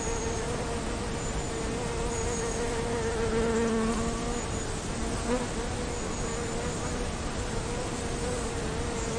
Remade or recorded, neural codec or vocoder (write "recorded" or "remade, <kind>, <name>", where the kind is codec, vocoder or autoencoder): recorded